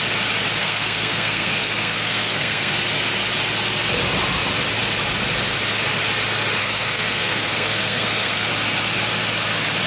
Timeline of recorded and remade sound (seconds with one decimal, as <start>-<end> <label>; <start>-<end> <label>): 0.0-0.6 recorded; 0.6-2.7 remade; 2.7-6.6 recorded; 6.6-8.5 remade; 8.5-9.9 recorded